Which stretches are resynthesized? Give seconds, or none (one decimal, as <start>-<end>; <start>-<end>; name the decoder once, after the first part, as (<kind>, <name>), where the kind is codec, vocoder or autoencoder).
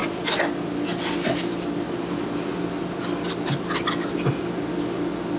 none